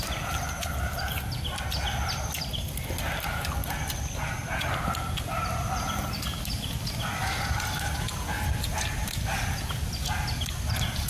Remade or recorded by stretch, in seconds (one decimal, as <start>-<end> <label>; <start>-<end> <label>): 0.0-11.1 recorded